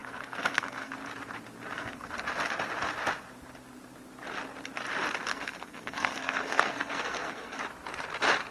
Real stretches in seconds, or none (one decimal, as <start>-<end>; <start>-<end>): 0.9-1.7; 2.2-5.3; 7.6-8.5